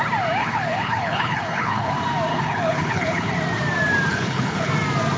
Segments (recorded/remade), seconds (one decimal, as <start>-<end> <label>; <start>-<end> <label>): 0.0-0.4 recorded; 0.4-1.9 remade; 1.9-2.3 recorded; 2.3-3.3 remade; 3.3-4.1 recorded; 4.1-4.7 remade; 4.7-5.2 recorded